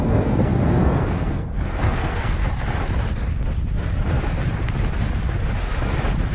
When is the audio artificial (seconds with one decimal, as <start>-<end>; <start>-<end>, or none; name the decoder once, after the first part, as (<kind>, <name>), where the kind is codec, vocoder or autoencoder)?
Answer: 0.0-2.4 (codec, SNAC)